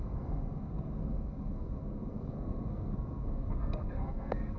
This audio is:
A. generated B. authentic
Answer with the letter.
A